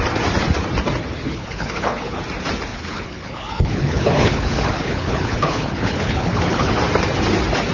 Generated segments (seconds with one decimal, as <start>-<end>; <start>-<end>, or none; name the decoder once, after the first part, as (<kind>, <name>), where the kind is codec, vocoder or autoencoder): 1.3-2.2 (codec, HILCodec); 2.7-6.7